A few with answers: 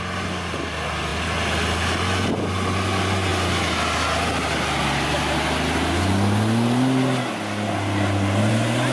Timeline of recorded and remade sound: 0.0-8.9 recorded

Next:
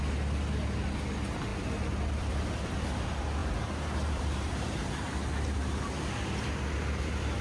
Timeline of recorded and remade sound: 0.0-3.4 recorded; 3.4-4.9 remade; 4.9-7.4 recorded

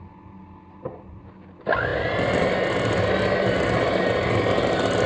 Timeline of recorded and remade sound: 0.0-5.1 recorded

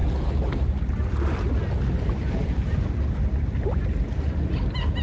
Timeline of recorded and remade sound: 0.0-5.0 recorded

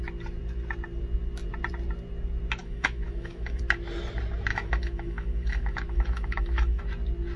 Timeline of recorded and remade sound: 0.0-2.6 recorded; 2.6-3.6 remade; 3.6-4.5 recorded; 4.5-6.8 remade; 6.8-7.4 recorded

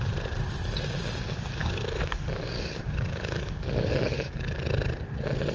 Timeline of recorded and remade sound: 0.0-1.6 recorded; 1.6-4.6 remade; 4.6-5.5 recorded

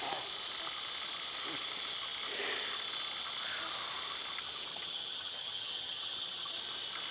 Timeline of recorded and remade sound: 0.0-4.7 recorded; 4.7-6.6 remade; 6.6-7.1 recorded

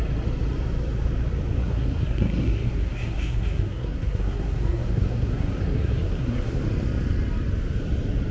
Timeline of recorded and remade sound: 0.0-1.6 recorded; 1.6-6.6 remade; 6.6-8.3 recorded